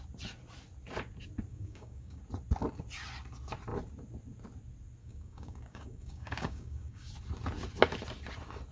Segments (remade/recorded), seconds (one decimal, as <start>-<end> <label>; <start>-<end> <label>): 0.0-1.5 recorded; 1.5-2.2 remade; 2.2-5.0 recorded; 5.0-7.1 remade; 7.1-8.7 recorded